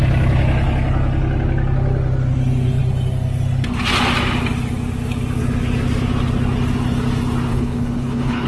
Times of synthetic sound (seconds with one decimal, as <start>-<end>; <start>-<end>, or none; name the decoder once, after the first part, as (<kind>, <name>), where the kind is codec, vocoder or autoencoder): 7.5-8.5 (codec, HILCodec)